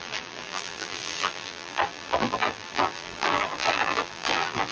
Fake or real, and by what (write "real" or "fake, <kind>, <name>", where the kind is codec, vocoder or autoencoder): fake, vocoder, BigVGAN v2